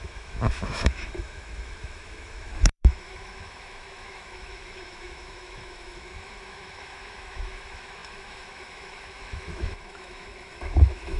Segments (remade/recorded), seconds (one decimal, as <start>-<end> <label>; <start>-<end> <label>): 0.0-11.2 remade